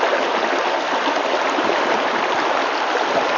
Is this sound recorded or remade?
recorded